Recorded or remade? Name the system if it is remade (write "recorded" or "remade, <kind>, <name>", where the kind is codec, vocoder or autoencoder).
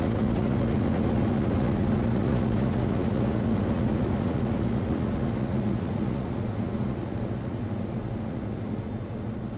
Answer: remade, vocoder, Vocos